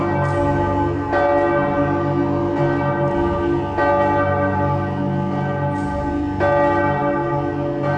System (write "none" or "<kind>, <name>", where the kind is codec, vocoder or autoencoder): none